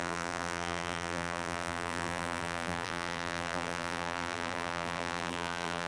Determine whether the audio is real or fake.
fake